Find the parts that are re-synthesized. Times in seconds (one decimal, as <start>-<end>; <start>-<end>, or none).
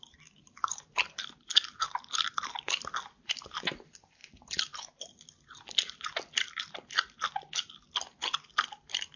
none